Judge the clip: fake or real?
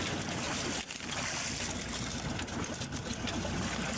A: real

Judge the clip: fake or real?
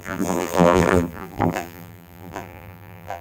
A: fake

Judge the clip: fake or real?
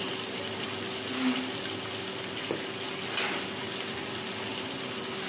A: real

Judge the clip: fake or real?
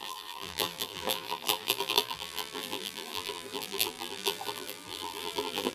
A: fake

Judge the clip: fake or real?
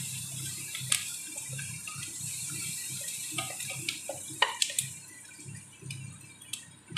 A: fake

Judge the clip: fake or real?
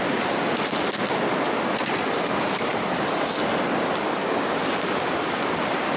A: real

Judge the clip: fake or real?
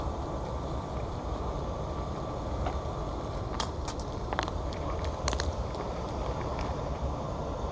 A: fake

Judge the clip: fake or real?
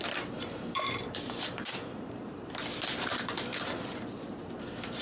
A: fake